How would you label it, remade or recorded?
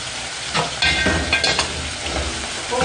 recorded